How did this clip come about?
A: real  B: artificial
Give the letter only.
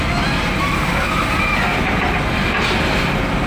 A